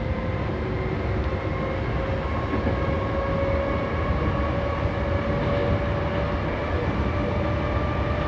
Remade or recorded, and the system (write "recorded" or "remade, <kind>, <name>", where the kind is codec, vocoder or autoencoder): recorded